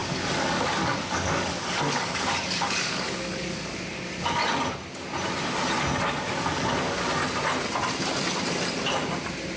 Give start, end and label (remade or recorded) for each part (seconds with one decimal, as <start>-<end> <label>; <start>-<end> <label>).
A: 0.0-4.4 remade; 4.4-6.0 recorded; 6.0-7.2 remade; 7.2-9.6 recorded